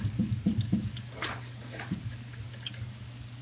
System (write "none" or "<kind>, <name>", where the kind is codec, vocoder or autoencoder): codec, DAC